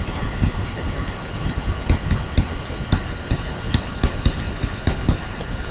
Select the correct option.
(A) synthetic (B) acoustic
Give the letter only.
B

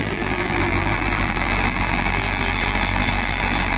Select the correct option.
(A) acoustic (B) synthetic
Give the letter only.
B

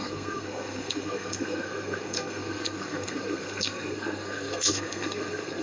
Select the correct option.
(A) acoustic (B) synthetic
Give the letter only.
B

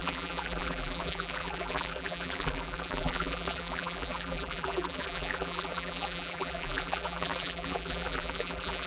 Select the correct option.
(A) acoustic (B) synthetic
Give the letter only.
B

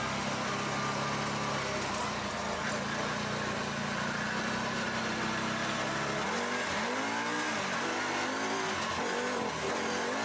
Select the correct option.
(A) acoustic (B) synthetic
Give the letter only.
A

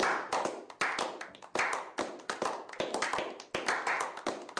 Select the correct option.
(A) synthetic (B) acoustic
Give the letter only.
B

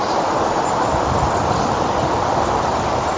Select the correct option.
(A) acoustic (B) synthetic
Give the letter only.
A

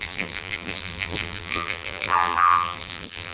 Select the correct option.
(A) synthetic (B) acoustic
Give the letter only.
A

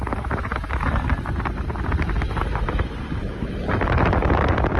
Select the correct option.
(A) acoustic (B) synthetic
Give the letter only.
A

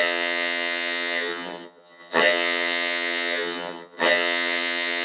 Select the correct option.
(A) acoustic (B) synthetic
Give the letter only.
B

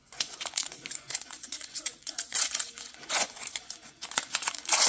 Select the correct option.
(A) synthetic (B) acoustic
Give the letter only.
A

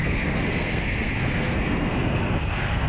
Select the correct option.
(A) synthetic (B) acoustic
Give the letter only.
A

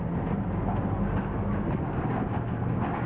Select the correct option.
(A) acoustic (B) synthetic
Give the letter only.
A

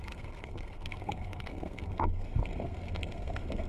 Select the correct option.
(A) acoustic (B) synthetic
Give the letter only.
B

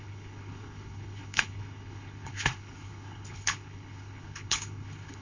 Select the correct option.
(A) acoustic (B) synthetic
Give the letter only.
B